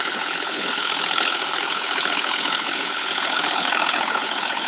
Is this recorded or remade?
remade